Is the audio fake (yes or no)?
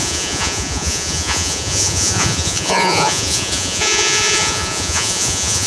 yes